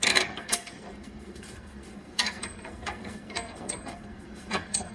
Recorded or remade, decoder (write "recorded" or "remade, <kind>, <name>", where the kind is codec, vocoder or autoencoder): remade, codec, SNAC